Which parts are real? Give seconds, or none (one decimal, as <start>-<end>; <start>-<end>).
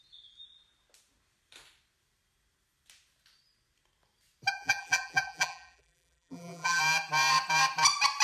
0.0-4.5; 6.8-8.2